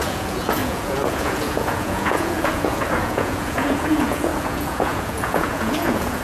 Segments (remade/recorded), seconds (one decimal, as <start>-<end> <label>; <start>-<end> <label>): 0.0-6.2 remade